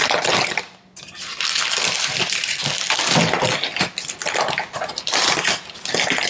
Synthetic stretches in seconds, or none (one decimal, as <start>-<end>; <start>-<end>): none